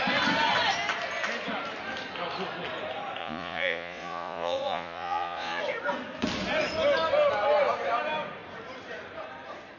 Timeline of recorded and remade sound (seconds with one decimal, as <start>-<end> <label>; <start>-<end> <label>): 0.0-3.2 recorded; 3.2-5.6 remade; 5.6-9.8 recorded